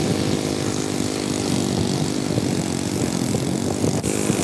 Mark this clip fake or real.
real